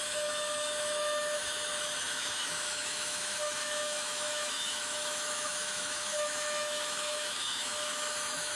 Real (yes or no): no